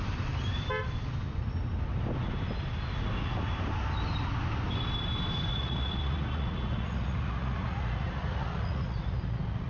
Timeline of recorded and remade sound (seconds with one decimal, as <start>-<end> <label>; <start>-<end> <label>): 0.0-5.5 recorded; 5.5-9.7 remade